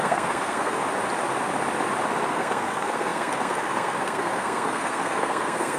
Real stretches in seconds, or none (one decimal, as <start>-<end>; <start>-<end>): 0.8-2.3